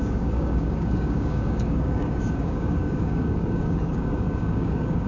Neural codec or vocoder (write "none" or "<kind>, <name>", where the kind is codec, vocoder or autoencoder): codec, DAC